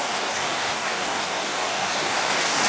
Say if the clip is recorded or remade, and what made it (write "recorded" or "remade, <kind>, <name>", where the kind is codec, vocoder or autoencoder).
remade, codec, DAC